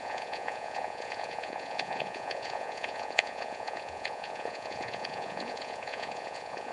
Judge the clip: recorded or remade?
remade